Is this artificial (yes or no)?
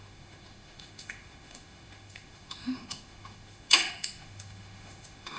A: yes